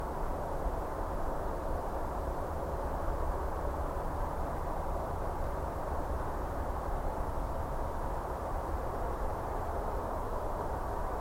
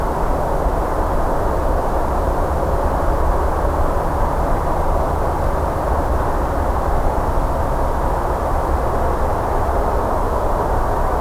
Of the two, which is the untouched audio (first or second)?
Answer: second